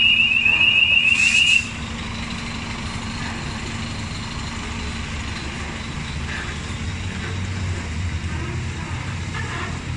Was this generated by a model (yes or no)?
no